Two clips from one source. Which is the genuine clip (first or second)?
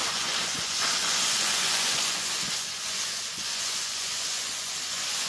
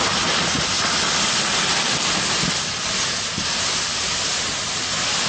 second